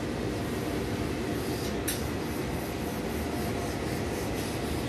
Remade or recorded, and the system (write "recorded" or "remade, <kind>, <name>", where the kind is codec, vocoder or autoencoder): recorded